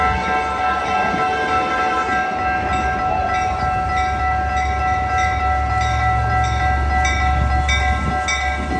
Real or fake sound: real